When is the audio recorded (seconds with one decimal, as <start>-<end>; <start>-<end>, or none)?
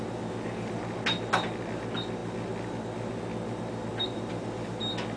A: 0.0-5.2